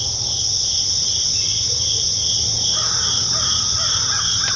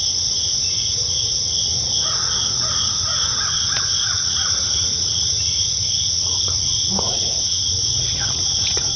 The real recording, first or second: first